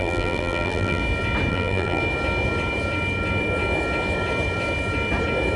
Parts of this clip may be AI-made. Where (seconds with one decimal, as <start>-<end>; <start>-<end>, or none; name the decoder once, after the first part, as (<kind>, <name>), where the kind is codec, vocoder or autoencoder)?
0.0-1.0 (vocoder, BigVGAN v2); 1.5-2.0